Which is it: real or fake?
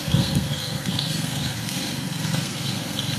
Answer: fake